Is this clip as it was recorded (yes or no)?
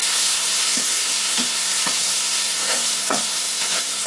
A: no